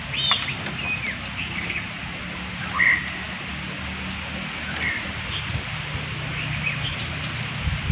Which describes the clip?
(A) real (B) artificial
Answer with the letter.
A